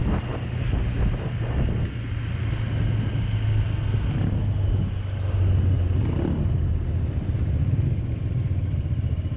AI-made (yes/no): no